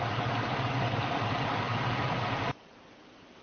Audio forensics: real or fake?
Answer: real